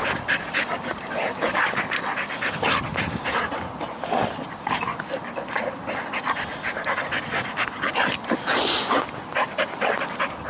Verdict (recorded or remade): recorded